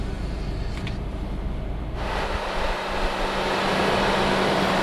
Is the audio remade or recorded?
recorded